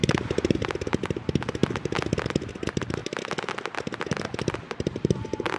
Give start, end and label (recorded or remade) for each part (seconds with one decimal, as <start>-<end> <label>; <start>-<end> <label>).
0.0-1.6 remade; 1.6-2.5 recorded; 2.5-3.0 remade; 3.0-3.5 recorded; 3.5-5.6 remade